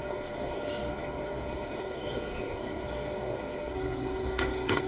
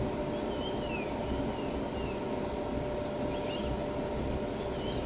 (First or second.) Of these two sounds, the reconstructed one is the first